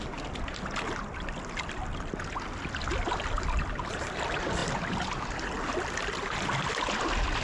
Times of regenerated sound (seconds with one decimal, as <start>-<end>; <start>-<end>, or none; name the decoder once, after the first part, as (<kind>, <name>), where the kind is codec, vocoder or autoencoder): none